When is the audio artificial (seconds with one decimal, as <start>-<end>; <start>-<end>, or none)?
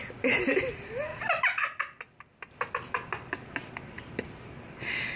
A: none